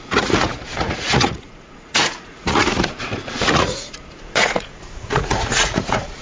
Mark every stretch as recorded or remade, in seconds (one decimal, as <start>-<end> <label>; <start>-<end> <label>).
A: 0.0-6.2 remade